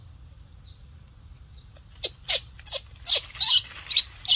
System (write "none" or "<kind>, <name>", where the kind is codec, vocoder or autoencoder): none